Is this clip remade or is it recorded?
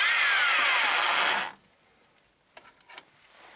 recorded